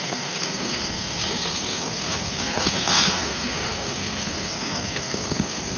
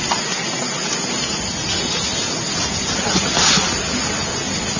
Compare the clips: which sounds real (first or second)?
second